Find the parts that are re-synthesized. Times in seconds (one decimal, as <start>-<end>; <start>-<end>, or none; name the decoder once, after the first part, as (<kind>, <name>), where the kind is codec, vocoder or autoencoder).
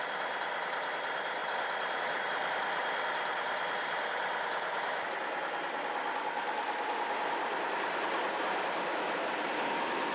none